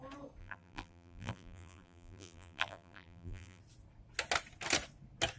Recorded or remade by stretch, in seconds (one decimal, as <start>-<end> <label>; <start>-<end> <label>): 0.0-0.4 recorded; 0.4-3.6 remade; 3.6-5.4 recorded